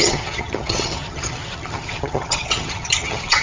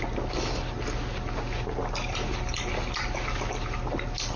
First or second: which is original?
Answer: second